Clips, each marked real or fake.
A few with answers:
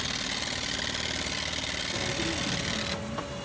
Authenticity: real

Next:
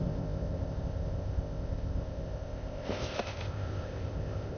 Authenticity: fake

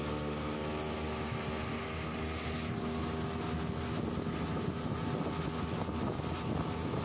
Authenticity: real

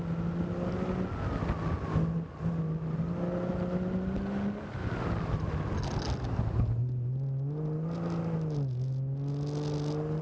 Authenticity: real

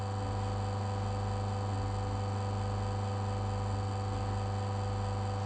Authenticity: real